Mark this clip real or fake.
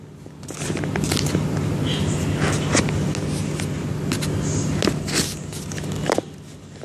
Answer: real